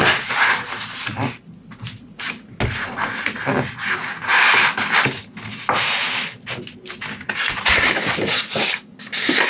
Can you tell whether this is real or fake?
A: real